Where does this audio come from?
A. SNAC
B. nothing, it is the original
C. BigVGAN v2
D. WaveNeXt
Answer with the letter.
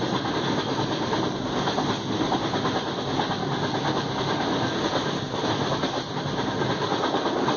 B